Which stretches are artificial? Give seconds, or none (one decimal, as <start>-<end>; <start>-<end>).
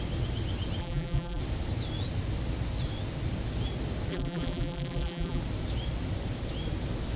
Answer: 0.8-1.4; 4.1-5.4